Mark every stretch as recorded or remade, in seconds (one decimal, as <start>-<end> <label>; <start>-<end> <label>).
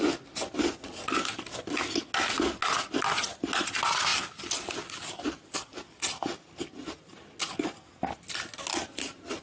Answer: 0.0-9.4 recorded